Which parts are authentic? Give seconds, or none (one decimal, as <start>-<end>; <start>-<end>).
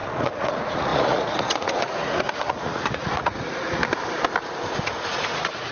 3.8-4.8